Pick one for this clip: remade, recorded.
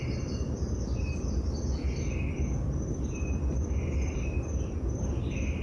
remade